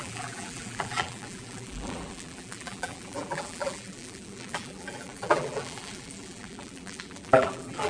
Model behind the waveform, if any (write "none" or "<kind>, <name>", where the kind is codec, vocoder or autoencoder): vocoder, BigVGAN v2